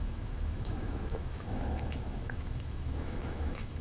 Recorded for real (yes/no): no